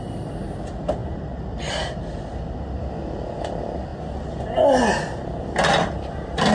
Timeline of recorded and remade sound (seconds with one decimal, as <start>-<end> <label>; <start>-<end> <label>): 0.0-6.5 recorded